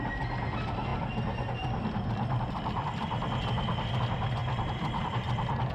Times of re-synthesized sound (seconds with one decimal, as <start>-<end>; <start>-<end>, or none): none